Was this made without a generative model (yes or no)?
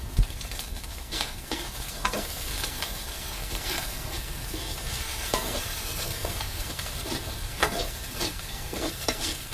no